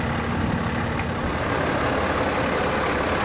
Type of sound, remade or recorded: recorded